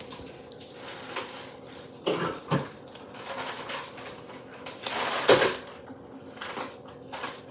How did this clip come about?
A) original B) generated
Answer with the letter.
A